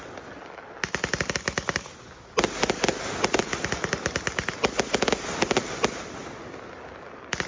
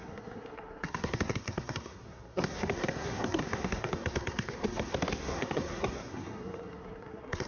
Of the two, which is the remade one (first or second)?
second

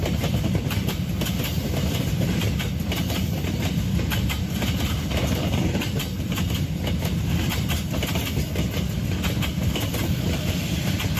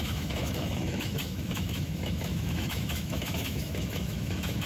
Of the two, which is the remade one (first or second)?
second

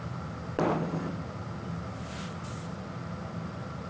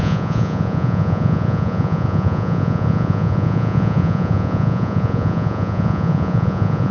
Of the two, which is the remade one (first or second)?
second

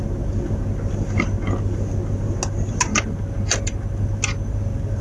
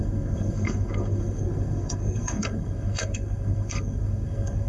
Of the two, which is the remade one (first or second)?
second